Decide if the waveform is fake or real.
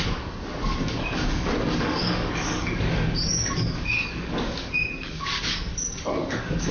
fake